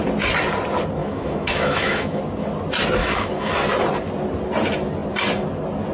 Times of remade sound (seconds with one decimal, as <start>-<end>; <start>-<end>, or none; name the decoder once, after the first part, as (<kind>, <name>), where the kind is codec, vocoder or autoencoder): 1.0-2.2 (autoencoder, DAC-VAE); 3.0-3.5